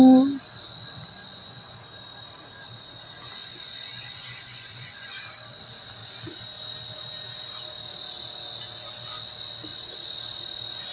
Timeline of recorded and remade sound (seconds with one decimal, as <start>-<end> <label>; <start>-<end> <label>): 0.0-1.2 recorded; 1.2-1.8 remade; 1.8-3.4 recorded; 3.4-5.2 remade; 5.2-10.9 recorded